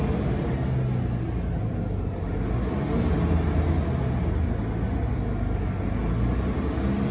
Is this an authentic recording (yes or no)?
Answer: yes